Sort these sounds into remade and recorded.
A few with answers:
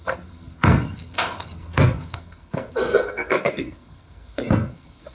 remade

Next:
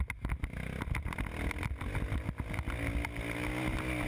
recorded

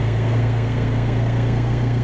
remade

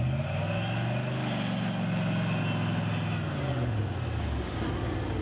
recorded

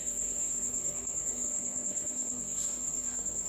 remade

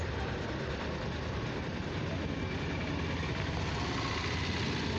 recorded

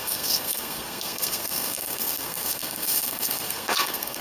remade